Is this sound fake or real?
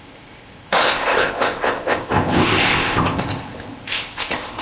fake